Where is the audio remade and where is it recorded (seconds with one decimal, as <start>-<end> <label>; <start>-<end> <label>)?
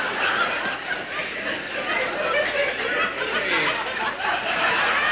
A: 0.0-5.1 recorded